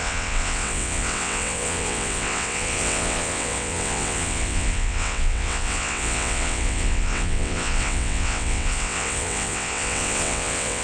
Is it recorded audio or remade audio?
remade